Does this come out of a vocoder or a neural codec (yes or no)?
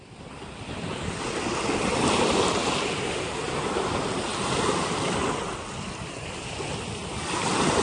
no